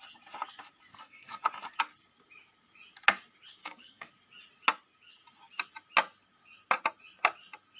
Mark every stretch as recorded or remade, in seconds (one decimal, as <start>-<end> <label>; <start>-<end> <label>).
0.0-0.9 recorded; 0.9-1.4 remade; 1.4-3.6 recorded; 3.6-4.1 remade; 4.1-7.8 recorded